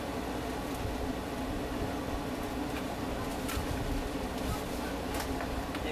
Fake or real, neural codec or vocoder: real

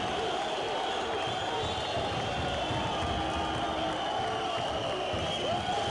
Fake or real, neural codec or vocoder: real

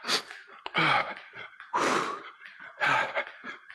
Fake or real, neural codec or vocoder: real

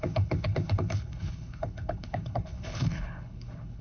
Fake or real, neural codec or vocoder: fake, codec, HILCodec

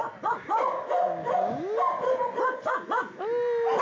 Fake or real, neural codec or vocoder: real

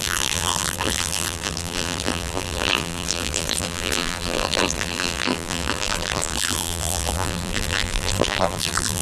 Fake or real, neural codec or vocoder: fake, vocoder, BigVGAN v2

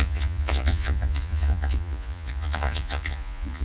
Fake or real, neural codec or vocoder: fake, vocoder, Vocos